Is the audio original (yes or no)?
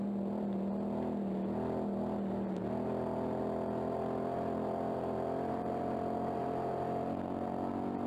yes